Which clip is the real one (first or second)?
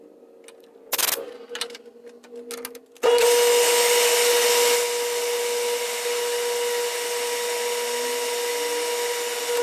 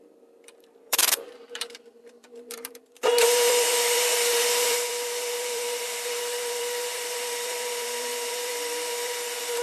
first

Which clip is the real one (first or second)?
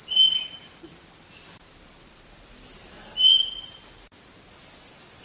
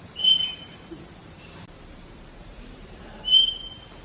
first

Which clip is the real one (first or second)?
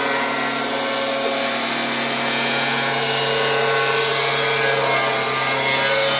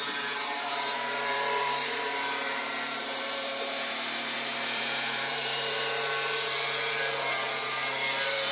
first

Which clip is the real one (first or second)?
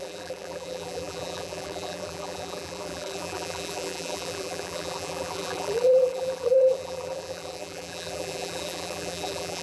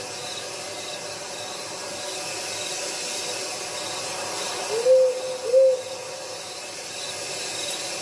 second